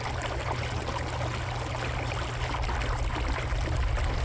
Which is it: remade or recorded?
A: recorded